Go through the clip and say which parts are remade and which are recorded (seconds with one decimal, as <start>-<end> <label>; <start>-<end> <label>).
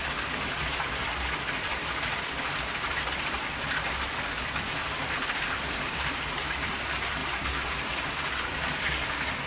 0.0-4.8 recorded; 4.8-6.8 remade; 6.8-9.5 recorded